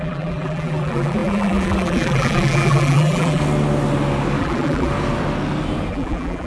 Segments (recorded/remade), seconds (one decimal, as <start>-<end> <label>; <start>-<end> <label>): 0.0-3.4 remade; 3.4-4.4 recorded; 4.4-4.9 remade; 4.9-5.9 recorded; 5.9-6.5 remade